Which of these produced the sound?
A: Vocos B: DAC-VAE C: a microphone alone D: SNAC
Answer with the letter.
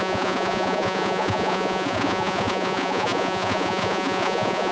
A